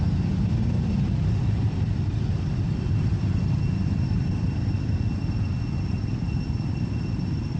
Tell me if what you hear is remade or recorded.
remade